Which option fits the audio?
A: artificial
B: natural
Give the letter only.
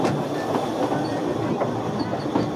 B